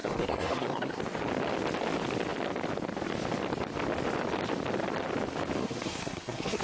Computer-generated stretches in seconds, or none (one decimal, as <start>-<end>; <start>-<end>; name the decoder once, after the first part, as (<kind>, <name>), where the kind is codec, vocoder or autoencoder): 0.0-1.0 (codec, SNAC); 5.6-6.6